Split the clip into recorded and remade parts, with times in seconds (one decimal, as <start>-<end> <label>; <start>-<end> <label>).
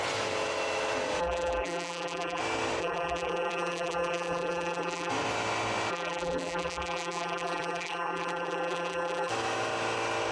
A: 0.0-1.2 recorded; 1.2-2.4 remade; 2.4-2.8 recorded; 2.8-5.1 remade; 5.1-5.9 recorded; 5.9-9.3 remade; 9.3-10.3 recorded